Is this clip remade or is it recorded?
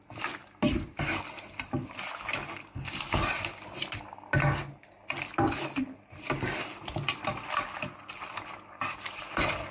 recorded